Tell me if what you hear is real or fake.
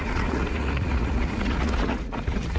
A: fake